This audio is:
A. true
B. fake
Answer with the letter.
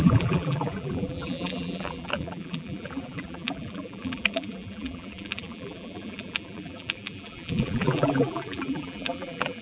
B